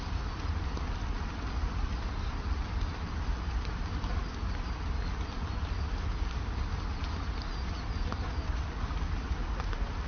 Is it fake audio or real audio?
real